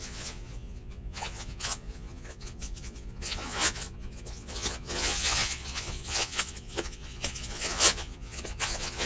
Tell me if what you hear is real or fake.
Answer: fake